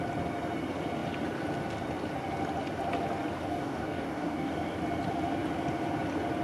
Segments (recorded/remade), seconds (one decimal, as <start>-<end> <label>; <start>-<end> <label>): 0.0-3.5 recorded; 3.5-4.5 remade; 4.5-6.4 recorded